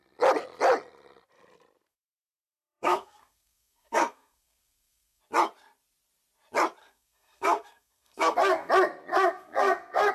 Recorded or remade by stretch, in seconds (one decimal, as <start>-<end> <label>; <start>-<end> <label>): 0.0-1.9 recorded; 1.9-5.2 remade; 5.2-6.8 recorded; 6.8-8.7 remade; 8.7-9.1 recorded; 9.1-10.1 remade